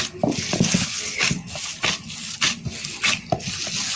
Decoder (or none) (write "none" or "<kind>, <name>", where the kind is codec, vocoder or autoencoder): none